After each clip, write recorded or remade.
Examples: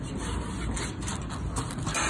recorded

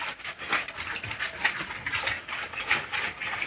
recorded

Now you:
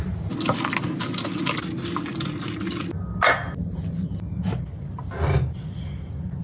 recorded